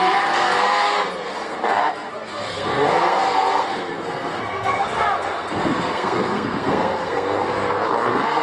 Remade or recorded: remade